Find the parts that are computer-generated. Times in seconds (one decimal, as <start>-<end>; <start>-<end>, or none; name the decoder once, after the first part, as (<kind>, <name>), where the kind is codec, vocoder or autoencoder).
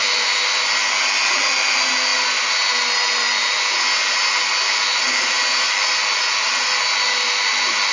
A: none